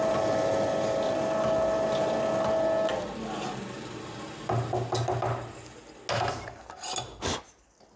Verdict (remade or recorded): recorded